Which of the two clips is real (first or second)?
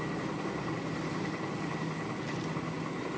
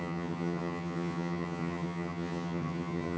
first